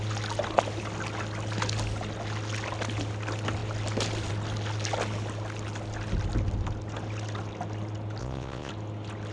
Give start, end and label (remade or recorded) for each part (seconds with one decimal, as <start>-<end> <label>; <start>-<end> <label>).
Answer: 0.0-8.2 recorded; 8.2-8.7 remade; 8.7-9.3 recorded